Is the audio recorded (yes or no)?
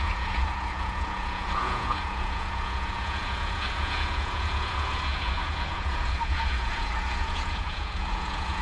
no